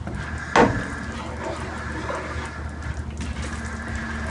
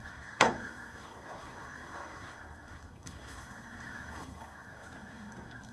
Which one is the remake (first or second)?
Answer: second